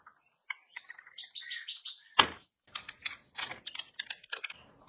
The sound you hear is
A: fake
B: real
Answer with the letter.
B